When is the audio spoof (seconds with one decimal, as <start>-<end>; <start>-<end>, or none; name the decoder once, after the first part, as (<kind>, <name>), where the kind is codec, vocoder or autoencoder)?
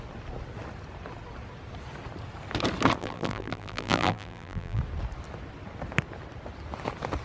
3.0-4.8 (vocoder, BigVGAN v2)